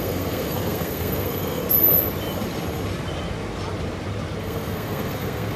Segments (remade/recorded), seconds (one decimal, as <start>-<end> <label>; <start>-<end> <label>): 0.0-1.6 remade; 1.6-4.4 recorded; 4.4-5.6 remade